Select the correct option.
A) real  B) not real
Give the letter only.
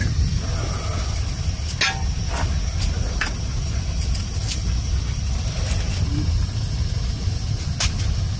A